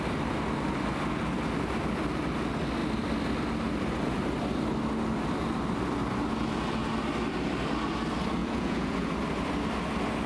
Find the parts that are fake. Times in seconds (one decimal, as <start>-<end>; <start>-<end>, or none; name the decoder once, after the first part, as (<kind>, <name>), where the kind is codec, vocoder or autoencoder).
8.4-9.1 (vocoder, Vocos)